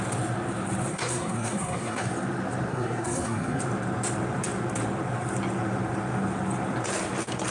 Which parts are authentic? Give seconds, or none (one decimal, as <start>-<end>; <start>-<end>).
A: 0.0-0.9; 2.1-2.7; 3.6-7.5